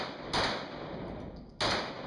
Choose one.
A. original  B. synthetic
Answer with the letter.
A